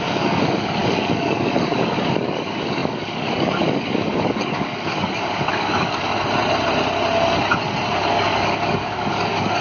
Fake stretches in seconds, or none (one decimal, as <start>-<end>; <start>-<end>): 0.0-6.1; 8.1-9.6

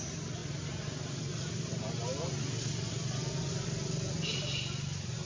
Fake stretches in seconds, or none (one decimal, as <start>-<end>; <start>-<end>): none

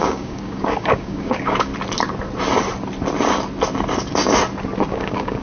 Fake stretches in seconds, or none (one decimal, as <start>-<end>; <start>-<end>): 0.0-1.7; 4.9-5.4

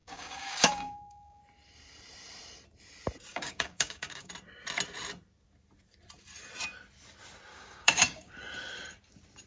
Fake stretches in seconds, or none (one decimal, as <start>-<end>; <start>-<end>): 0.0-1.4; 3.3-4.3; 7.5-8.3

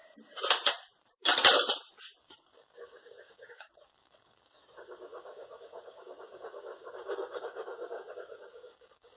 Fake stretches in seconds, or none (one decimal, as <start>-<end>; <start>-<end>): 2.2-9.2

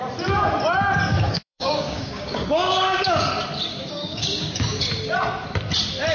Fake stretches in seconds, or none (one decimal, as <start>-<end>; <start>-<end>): 1.1-3.2; 3.7-4.8

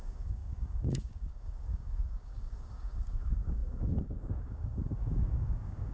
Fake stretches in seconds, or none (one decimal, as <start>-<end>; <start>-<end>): 0.0-5.9

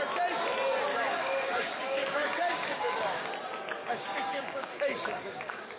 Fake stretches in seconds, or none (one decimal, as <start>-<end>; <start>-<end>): 0.9-3.3; 3.8-5.8